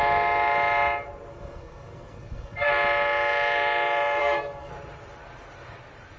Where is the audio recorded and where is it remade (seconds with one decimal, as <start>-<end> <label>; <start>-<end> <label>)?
0.0-1.3 recorded; 1.3-2.7 remade; 2.7-4.2 recorded; 4.2-4.7 remade; 4.7-6.2 recorded